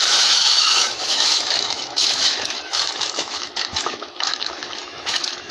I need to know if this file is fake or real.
fake